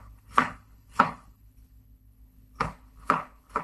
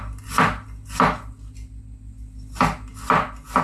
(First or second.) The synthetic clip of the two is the first